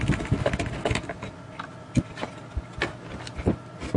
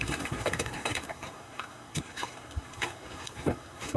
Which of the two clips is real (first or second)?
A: first